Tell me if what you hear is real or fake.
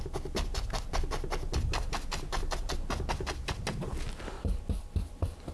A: real